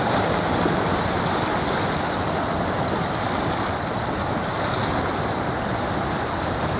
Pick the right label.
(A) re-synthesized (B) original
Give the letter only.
B